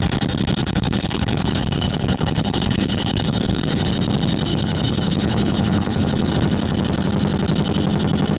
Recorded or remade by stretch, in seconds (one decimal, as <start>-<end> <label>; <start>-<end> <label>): 0.0-0.6 recorded; 0.6-3.9 remade; 3.9-4.5 recorded; 4.5-6.3 remade; 6.3-8.4 recorded